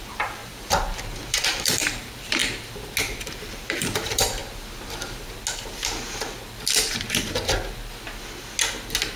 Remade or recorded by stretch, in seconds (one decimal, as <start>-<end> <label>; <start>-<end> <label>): 0.0-0.4 remade; 0.4-1.3 recorded; 1.3-2.4 remade; 2.4-3.3 recorded; 3.3-4.4 remade; 4.4-9.2 recorded